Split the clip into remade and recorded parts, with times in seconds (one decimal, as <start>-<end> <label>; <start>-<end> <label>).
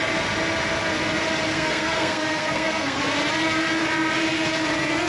0.0-1.5 recorded; 1.5-3.0 remade; 3.0-5.1 recorded